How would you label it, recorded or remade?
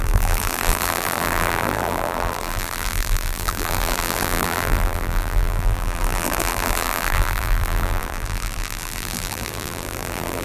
remade